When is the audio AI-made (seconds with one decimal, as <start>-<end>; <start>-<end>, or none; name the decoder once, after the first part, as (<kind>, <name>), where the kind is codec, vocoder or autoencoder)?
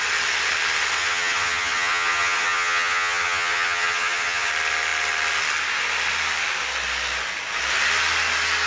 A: 1.0-4.5 (vocoder, HiFi-GAN)